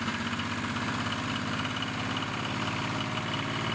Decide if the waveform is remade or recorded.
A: recorded